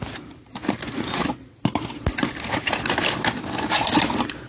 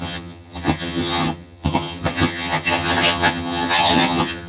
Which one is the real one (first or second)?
first